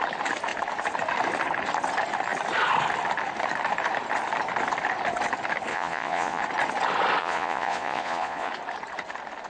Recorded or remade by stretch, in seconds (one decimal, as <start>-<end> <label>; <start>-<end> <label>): 0.0-5.7 recorded; 5.7-6.4 remade; 6.4-7.2 recorded; 7.2-8.5 remade; 8.5-9.5 recorded